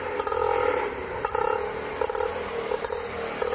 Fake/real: real